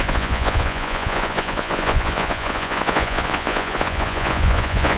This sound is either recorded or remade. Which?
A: remade